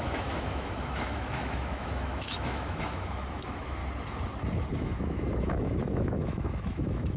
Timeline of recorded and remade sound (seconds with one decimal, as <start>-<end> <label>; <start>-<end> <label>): 0.0-3.8 remade; 3.8-4.7 recorded; 4.7-7.2 remade